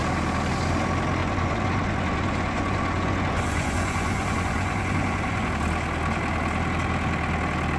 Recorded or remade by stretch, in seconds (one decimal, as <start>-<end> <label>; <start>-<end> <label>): 0.0-1.2 recorded; 1.2-5.5 remade; 5.5-7.8 recorded